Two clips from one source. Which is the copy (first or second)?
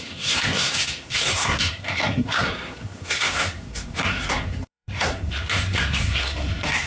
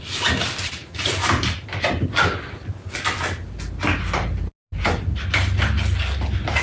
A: first